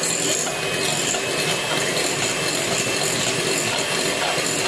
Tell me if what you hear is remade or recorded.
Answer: recorded